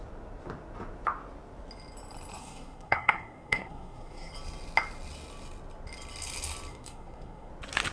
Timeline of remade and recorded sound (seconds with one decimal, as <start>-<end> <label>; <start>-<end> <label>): 0.0-2.4 recorded; 2.4-4.3 remade; 4.3-6.7 recorded; 6.7-7.5 remade; 7.5-7.9 recorded